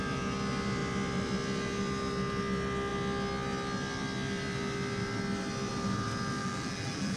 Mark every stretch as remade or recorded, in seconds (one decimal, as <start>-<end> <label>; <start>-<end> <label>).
0.0-6.4 recorded; 6.4-7.2 remade